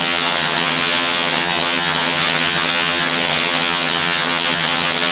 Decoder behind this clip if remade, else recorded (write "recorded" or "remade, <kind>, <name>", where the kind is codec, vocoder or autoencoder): remade, vocoder, HiFi-GAN